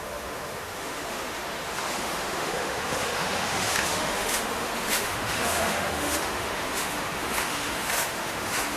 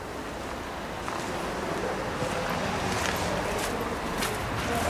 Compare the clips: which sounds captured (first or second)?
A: second